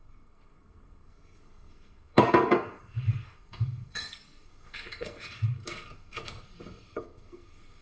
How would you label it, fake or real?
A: fake